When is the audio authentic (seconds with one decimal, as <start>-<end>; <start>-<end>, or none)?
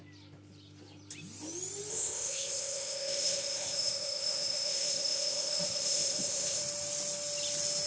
0.0-1.9; 6.6-7.9